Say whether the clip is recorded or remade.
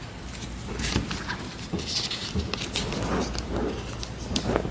recorded